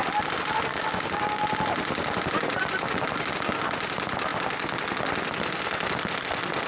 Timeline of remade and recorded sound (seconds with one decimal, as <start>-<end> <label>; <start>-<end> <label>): 0.0-0.7 recorded; 0.7-1.4 remade; 1.4-6.7 recorded